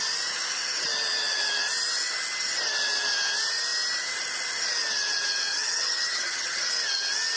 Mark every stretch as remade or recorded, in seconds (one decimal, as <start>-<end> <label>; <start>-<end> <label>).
0.0-5.5 recorded; 5.5-6.6 remade; 6.6-7.4 recorded